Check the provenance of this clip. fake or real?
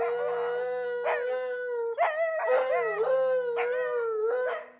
real